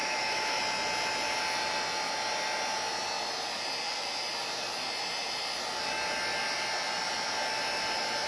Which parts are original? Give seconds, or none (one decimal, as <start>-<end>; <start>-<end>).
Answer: 0.6-8.3

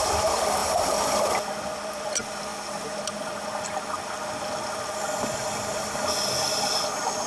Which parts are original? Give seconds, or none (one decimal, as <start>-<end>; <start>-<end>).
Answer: 0.0-0.6; 1.2-7.3

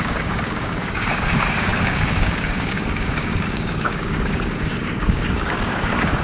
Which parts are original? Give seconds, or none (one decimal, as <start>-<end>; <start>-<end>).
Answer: none

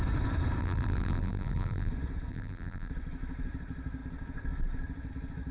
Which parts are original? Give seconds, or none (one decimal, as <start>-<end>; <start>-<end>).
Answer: 0.0-0.6; 1.9-2.3; 2.9-5.5

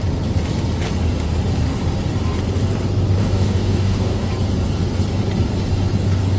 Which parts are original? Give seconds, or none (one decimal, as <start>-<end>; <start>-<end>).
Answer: 0.0-3.2; 4.3-6.4

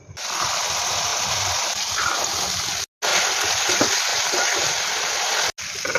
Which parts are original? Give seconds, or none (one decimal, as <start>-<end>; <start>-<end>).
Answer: 0.0-1.1; 2.5-3.1; 3.6-4.1; 5.3-6.0

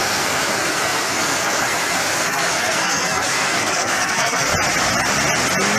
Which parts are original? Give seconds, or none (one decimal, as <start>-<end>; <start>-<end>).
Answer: 4.5-5.8